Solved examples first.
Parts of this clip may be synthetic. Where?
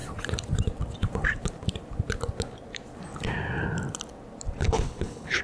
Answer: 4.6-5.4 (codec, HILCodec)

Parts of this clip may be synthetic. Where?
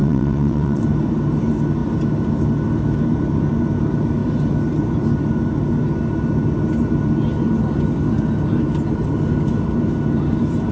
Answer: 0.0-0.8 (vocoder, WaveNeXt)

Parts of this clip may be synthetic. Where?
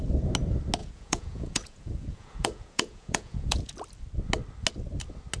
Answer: 0.8-3.7 (vocoder, Vocos)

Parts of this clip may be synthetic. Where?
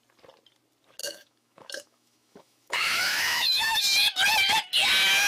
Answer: 1.0-3.8 (autoencoder, DAC-VAE)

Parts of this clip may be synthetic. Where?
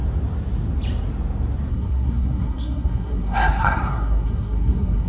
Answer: 1.7-5.1 (codec, SNAC)